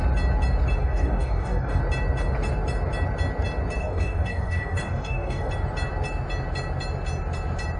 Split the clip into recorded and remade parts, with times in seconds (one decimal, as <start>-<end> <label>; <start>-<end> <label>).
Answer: 0.0-0.8 recorded; 0.8-1.8 remade; 1.8-3.8 recorded; 3.8-5.5 remade; 5.5-7.8 recorded